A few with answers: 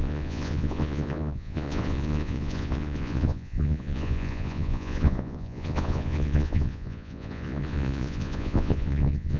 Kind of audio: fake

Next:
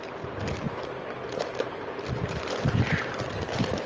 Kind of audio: real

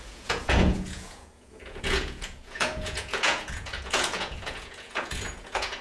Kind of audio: fake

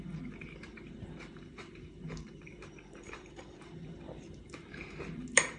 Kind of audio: fake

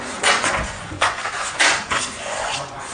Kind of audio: fake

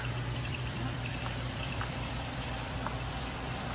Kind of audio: fake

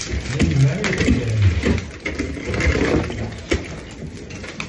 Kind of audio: real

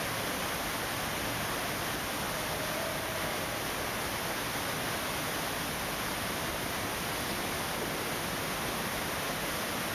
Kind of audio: real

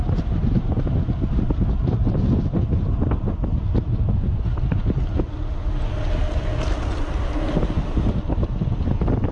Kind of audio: real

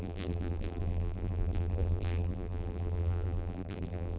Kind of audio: fake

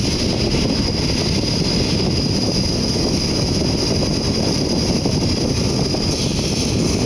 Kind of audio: real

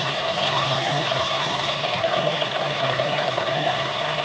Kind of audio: fake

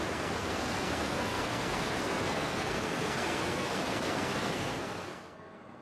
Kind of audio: fake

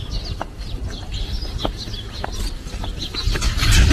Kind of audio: real